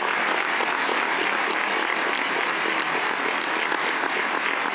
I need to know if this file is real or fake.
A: real